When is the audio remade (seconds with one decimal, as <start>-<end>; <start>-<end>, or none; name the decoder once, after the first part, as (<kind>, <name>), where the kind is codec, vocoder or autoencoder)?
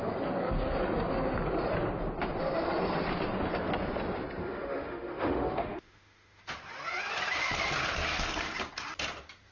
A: 4.4-6.4 (autoencoder, DAC-VAE)